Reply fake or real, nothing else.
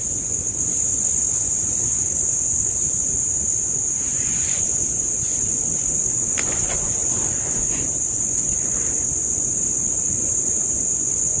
fake